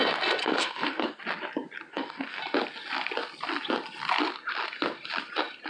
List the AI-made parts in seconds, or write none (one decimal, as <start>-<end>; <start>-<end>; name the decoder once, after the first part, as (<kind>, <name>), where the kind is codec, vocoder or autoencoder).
0.4-1.2 (codec, SNAC); 1.9-2.4